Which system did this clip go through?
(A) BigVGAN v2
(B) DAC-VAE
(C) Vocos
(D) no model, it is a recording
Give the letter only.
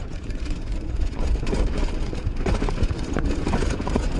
C